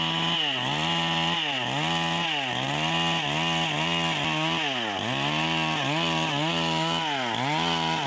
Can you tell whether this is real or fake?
real